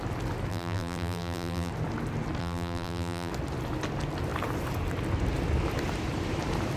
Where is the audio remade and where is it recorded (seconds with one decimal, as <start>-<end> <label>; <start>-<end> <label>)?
0.0-0.5 recorded; 0.5-1.7 remade; 1.7-2.4 recorded; 2.4-3.3 remade; 3.3-6.8 recorded